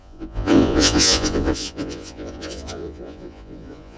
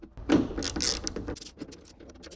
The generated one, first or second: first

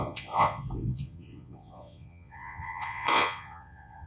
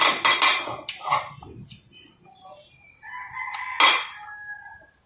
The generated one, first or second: first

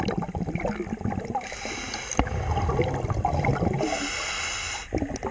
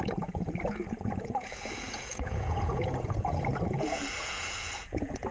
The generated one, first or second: second